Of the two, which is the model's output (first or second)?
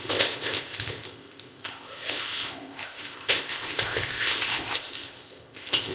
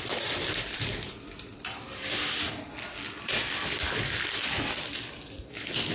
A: first